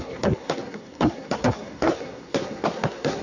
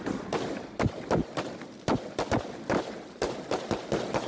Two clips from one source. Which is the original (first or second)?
second